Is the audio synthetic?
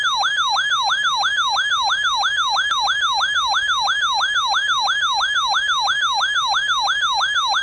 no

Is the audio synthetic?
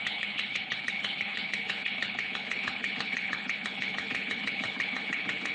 yes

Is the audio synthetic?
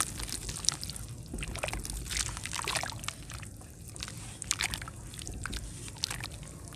no